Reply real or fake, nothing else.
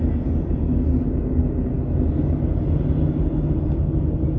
real